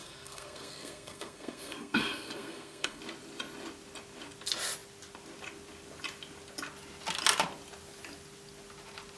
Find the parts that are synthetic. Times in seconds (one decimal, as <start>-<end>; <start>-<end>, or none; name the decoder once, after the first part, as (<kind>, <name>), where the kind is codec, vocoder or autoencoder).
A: 0.0-3.0 (codec, SNAC)